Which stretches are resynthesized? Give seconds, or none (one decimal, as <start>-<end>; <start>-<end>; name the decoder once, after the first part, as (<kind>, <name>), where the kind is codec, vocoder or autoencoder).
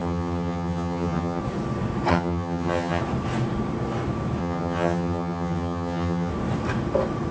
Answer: 0.0-1.4 (vocoder, HiFi-GAN); 2.1-3.0; 4.4-6.3